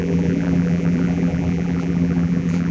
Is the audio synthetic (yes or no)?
yes